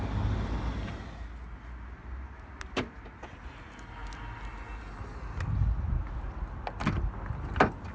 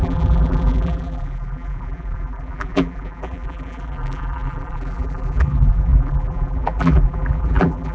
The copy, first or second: second